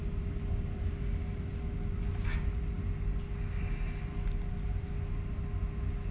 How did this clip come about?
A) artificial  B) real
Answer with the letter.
B